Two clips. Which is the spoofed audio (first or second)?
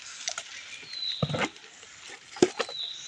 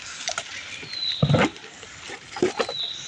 second